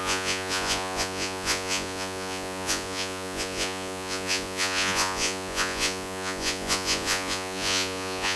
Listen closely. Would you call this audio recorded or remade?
remade